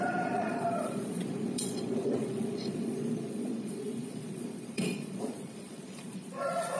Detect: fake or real fake